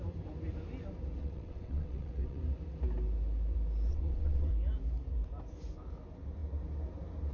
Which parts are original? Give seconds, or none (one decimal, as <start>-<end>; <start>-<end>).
0.0-1.2; 2.4-3.9; 4.5-7.3